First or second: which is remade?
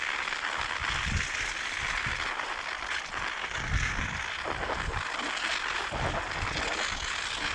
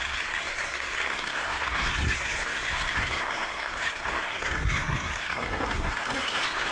second